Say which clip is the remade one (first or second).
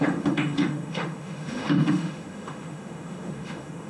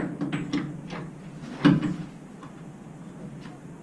first